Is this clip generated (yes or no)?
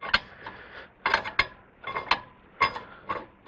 no